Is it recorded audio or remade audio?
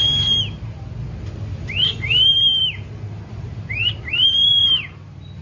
recorded